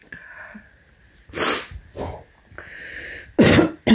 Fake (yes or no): no